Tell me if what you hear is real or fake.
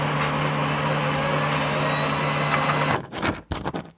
real